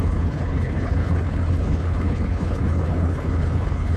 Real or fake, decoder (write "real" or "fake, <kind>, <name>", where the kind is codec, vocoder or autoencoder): fake, codec, HILCodec